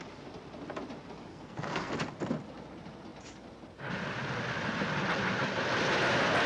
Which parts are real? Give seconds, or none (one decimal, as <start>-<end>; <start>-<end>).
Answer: 0.0-1.3; 1.9-6.5